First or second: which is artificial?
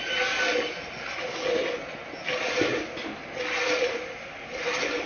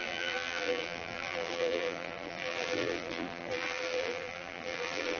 second